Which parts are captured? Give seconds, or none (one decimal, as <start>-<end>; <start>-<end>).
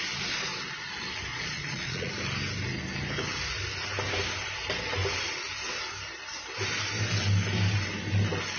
0.0-1.3; 2.1-8.6